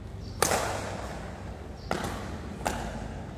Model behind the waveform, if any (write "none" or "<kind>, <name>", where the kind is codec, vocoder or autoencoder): none